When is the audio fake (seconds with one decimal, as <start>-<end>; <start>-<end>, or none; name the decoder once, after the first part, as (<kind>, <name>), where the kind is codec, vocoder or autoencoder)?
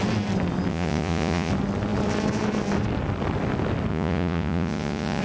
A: 0.7-1.5 (vocoder, Vocos); 3.9-5.2